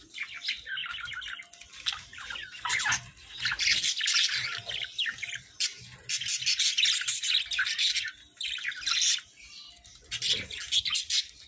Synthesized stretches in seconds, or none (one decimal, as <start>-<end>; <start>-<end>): none